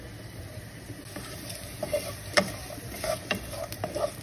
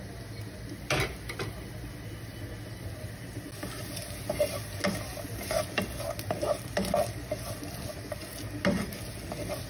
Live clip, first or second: second